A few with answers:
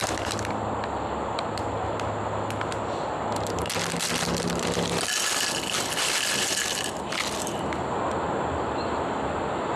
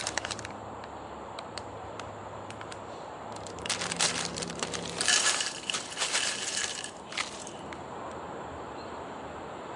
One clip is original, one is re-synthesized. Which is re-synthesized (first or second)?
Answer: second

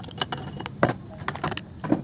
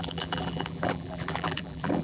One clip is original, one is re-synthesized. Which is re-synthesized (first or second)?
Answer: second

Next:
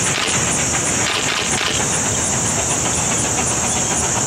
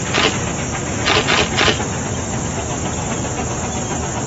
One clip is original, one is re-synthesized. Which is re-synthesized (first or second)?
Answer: first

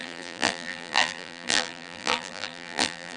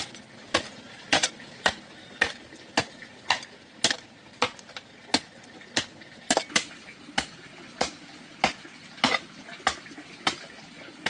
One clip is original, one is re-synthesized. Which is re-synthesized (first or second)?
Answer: first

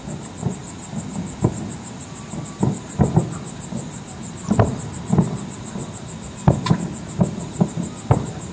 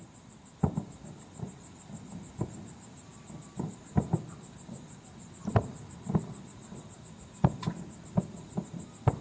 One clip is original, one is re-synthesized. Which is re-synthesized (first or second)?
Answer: second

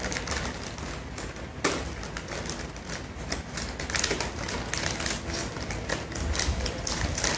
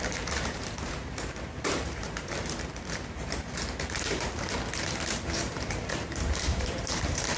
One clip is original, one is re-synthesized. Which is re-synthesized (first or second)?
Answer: second